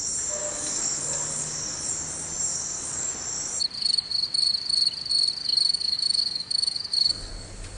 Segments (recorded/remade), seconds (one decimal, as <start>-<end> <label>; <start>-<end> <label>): 0.0-0.4 recorded; 0.4-1.9 remade; 1.9-2.5 recorded; 2.5-3.1 remade; 3.1-5.4 recorded; 5.4-7.3 remade; 7.3-7.8 recorded